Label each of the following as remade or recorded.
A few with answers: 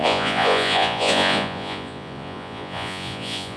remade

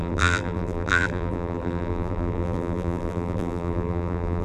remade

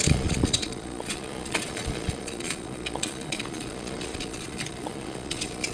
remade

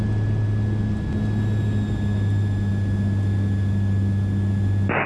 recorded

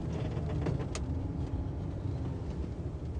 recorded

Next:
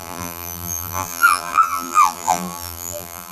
remade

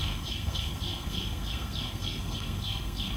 remade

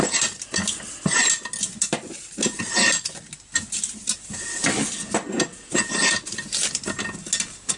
recorded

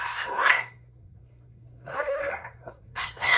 remade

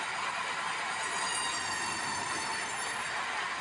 recorded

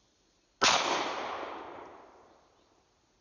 recorded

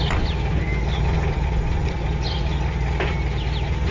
recorded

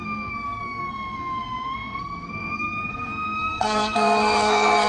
remade